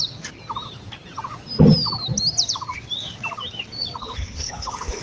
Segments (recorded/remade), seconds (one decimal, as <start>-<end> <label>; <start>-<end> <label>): 0.0-4.0 recorded; 4.0-5.0 remade